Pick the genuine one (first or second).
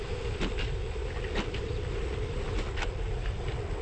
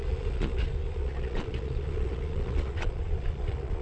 first